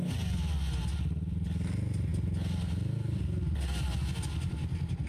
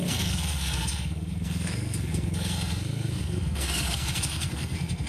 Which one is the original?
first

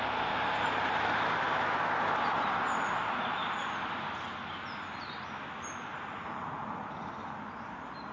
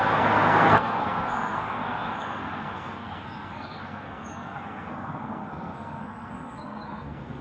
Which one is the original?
first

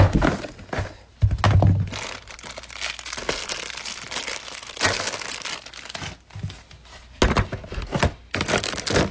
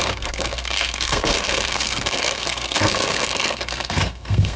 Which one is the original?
first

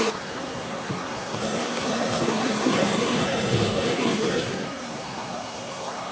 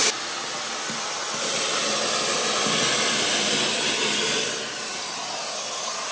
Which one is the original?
second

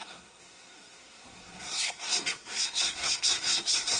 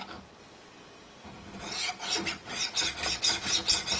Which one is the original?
second